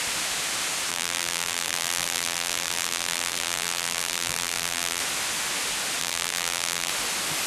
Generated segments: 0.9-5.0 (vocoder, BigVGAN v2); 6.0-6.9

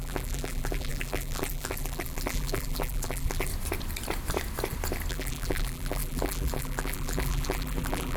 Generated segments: 0.0-3.5 (vocoder, BigVGAN v2); 5.1-8.2

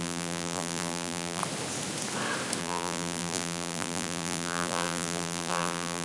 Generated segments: 0.0-1.4 (vocoder, BigVGAN v2); 2.6-6.0

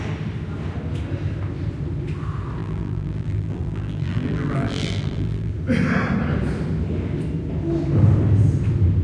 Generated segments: 2.6-5.5 (vocoder, BigVGAN v2)

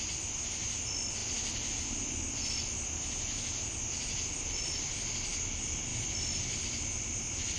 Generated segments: 5.9-6.6 (vocoder, BigVGAN v2)

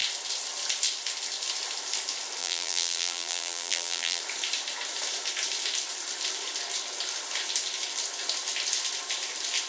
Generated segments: 2.4-4.2 (vocoder, BigVGAN v2)

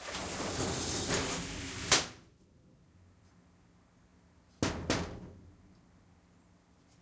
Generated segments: none

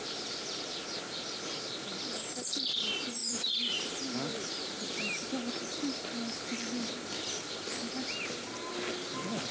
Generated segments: 3.2-3.9 (vocoder, BigVGAN v2); 4.3-5.3